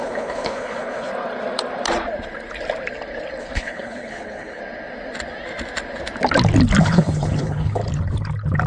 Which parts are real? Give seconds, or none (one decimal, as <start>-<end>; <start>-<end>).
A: 1.1-3.4; 4.6-6.8; 7.8-8.7